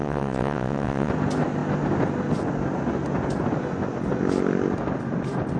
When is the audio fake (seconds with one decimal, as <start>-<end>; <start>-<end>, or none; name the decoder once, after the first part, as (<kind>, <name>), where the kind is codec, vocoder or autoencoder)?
0.0-1.1 (vocoder, WaveNeXt)